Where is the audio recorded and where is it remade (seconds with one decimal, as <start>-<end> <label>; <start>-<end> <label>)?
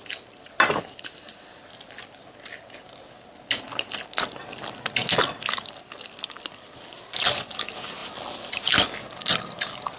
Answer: 0.0-10.0 recorded